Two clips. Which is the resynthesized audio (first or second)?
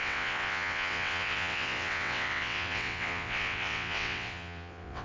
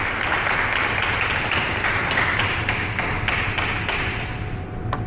first